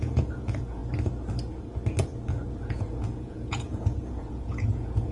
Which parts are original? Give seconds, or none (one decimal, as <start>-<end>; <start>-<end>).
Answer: 0.8-2.6

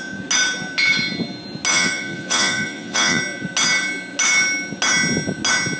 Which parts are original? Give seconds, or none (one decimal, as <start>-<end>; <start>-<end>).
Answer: 0.0-1.7; 3.2-5.8

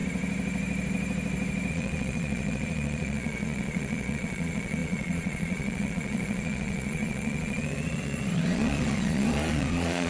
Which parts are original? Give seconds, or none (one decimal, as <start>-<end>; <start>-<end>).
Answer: 0.0-1.7

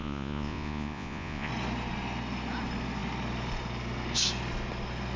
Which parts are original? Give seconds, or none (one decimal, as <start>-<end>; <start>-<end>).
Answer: 1.5-5.2